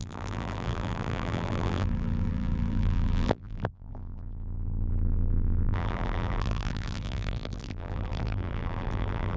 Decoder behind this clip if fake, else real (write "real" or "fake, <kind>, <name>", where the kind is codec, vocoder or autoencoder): fake, vocoder, BigVGAN v2